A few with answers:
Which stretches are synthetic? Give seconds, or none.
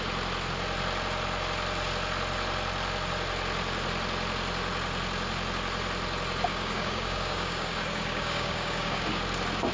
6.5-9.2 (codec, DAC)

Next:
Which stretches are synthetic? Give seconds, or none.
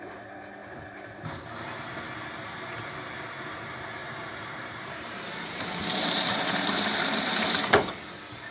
0.6-1.8 (vocoder, BigVGAN v2); 4.0-7.9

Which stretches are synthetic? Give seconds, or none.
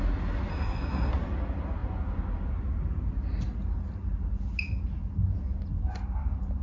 0.5-1.1 (codec, SNAC)